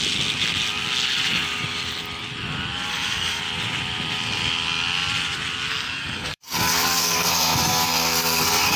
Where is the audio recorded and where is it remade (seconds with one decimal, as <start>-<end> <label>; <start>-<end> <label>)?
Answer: 0.0-2.9 recorded; 2.9-3.4 remade; 3.4-5.7 recorded; 5.7-8.8 remade